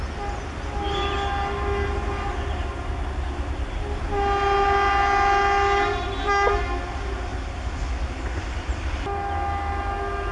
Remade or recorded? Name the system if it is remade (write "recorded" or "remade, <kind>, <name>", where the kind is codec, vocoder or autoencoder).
recorded